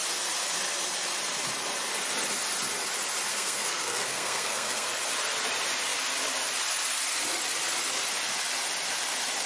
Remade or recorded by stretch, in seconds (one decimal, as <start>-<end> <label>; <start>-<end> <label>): 0.0-3.3 recorded; 3.3-4.9 remade; 4.9-9.5 recorded